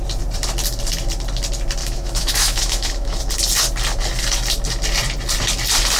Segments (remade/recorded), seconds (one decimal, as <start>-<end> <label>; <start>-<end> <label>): 0.0-1.8 recorded; 1.8-3.2 remade; 3.2-6.0 recorded